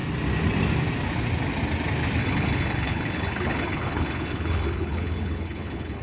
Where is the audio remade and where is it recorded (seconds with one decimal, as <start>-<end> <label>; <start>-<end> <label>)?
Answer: 0.0-2.2 recorded; 2.2-6.0 remade